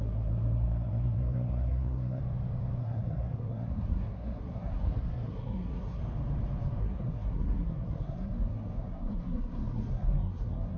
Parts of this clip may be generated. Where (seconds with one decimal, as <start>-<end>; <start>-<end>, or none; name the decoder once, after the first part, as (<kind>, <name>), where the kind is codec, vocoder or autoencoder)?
0.0-2.2 (codec, SNAC); 2.8-6.0; 6.8-10.8